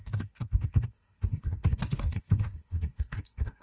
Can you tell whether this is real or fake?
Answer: fake